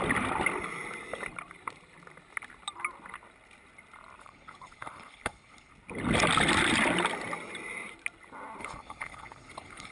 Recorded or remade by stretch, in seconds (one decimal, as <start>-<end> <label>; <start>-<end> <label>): 0.0-4.2 recorded; 4.2-5.7 remade; 5.7-8.6 recorded; 8.6-9.9 remade